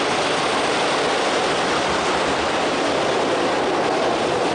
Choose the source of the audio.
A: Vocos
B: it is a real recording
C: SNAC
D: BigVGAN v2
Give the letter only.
B